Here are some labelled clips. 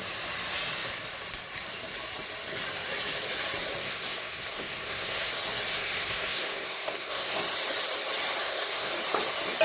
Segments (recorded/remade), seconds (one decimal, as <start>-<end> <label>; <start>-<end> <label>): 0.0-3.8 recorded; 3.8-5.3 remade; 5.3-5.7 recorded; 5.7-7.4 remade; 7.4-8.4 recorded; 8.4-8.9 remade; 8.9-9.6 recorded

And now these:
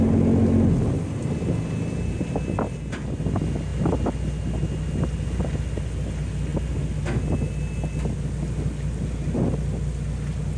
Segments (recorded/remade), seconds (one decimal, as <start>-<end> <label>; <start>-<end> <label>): 0.0-10.6 recorded

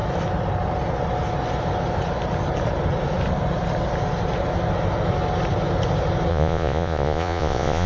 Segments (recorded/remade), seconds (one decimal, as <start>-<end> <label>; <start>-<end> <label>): 0.0-6.3 recorded; 6.3-7.9 remade

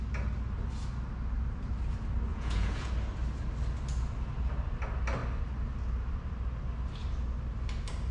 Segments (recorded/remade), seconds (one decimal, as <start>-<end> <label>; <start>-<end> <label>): 0.0-2.3 recorded; 2.3-2.9 remade; 2.9-8.1 recorded

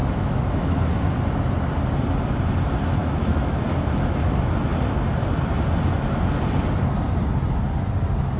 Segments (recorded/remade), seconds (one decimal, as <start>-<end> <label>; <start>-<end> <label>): 0.0-0.8 remade; 0.8-3.0 recorded; 3.0-3.6 remade; 3.6-8.4 recorded

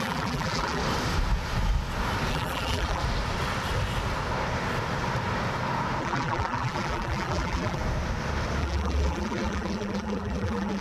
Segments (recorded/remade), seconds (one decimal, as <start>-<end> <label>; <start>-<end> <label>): 0.0-0.8 remade; 0.8-2.3 recorded; 2.3-3.0 remade; 3.0-6.0 recorded; 6.0-7.8 remade; 7.8-8.6 recorded; 8.6-10.8 remade